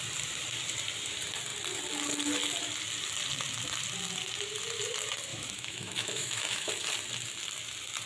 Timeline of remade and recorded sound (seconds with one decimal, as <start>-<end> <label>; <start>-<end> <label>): 0.0-5.3 recorded; 5.3-6.7 remade; 6.7-8.1 recorded